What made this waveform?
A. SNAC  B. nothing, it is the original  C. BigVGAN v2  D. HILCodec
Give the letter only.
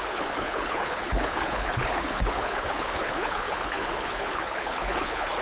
D